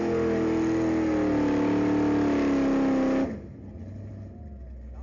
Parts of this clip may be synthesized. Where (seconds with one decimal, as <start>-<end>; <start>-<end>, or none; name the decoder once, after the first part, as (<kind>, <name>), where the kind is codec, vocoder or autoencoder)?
none